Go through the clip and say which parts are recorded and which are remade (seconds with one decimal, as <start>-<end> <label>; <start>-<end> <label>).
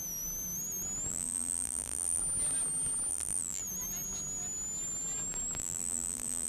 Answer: 0.0-1.1 recorded; 1.1-2.2 remade; 2.2-3.1 recorded; 3.1-3.6 remade; 3.6-5.6 recorded; 5.6-6.5 remade